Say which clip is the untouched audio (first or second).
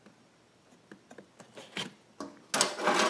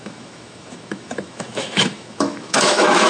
first